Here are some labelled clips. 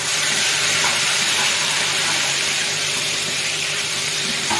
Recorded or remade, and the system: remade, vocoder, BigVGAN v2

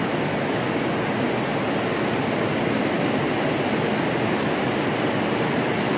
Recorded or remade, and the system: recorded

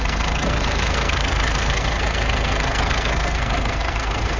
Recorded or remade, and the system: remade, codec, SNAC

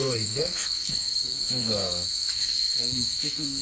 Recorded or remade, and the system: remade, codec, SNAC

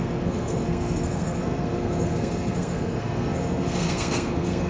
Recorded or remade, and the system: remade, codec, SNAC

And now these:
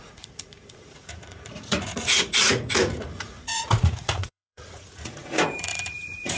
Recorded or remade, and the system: remade, vocoder, Vocos